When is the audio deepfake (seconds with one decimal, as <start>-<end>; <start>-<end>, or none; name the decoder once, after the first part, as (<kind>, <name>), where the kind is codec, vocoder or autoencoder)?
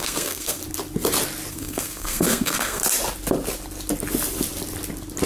0.0-0.6 (codec, SNAC); 1.5-2.8